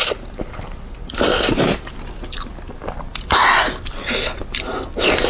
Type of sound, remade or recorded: recorded